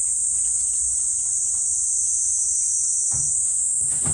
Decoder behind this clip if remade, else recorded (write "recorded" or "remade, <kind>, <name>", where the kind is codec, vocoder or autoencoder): recorded